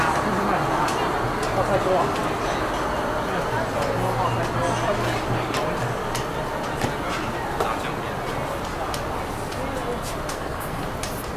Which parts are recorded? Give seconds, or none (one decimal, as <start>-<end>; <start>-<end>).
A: 0.0-10.3; 10.8-11.4